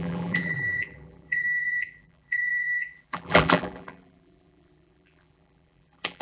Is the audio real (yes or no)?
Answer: no